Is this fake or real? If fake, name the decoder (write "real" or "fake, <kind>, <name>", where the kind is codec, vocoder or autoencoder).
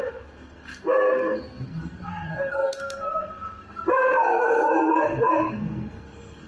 fake, codec, SNAC